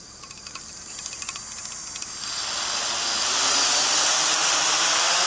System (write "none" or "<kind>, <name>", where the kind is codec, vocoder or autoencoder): none